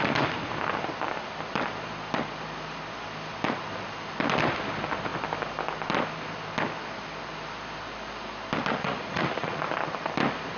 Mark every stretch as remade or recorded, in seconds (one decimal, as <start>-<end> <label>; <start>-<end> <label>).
0.0-8.8 recorded; 8.8-9.6 remade; 9.6-10.6 recorded

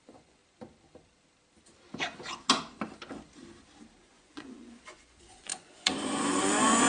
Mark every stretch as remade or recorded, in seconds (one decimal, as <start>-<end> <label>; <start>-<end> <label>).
0.0-0.4 remade; 0.4-4.0 recorded; 4.0-6.9 remade

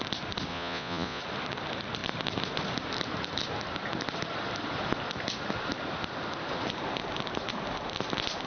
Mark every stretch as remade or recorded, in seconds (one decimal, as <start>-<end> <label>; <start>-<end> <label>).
0.0-0.5 recorded; 0.5-1.2 remade; 1.2-8.5 recorded

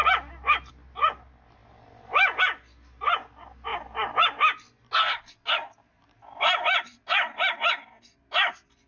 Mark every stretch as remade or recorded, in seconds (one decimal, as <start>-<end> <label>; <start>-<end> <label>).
0.0-8.9 recorded